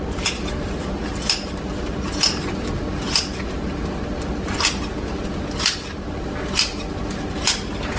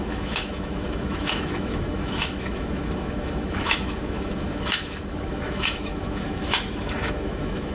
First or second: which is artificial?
second